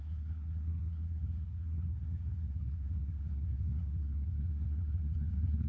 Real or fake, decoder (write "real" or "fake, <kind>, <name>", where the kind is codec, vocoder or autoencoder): fake, codec, SNAC